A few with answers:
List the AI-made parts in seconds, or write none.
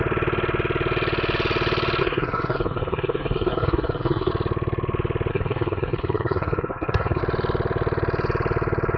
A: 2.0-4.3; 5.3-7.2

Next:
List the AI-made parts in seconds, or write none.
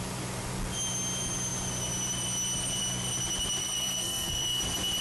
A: 3.6-4.6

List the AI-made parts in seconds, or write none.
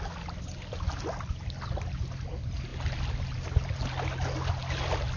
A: none